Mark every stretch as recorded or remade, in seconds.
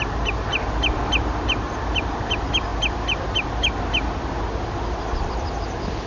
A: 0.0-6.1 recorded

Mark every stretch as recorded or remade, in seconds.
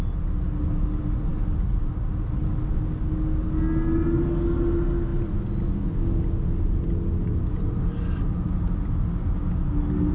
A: 0.0-10.1 recorded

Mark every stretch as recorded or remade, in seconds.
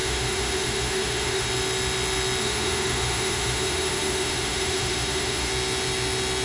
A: 0.0-1.5 remade; 1.5-2.4 recorded; 2.4-5.5 remade; 5.5-6.4 recorded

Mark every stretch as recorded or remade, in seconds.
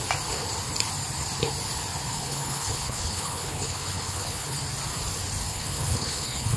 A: 0.0-2.1 recorded; 2.1-4.6 remade; 4.6-5.5 recorded; 5.5-6.6 remade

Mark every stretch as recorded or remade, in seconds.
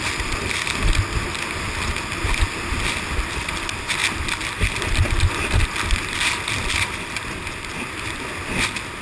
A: 0.0-9.0 recorded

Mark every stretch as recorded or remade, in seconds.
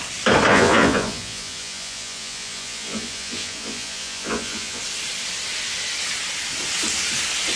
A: 0.0-0.5 recorded; 0.5-4.8 remade; 4.8-7.6 recorded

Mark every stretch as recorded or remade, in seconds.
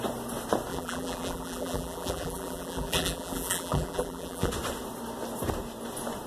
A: 0.0-0.7 recorded; 0.7-4.5 remade; 4.5-6.3 recorded